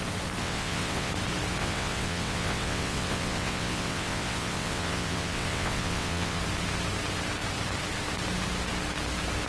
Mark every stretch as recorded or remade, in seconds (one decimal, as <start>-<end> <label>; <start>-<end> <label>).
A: 0.0-0.4 recorded; 0.4-1.1 remade; 1.1-1.6 recorded; 1.6-6.4 remade; 6.4-9.5 recorded

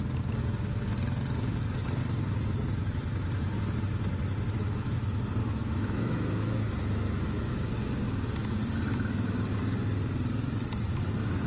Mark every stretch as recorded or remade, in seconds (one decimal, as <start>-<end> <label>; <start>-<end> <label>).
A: 0.0-5.4 recorded; 5.4-7.7 remade; 7.7-11.5 recorded

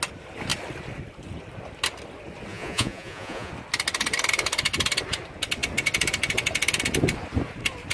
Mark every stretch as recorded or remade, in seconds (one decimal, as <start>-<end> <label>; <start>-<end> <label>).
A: 0.0-2.5 recorded; 2.5-3.5 remade; 3.5-7.9 recorded